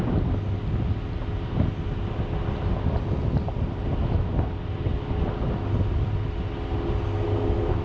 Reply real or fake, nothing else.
real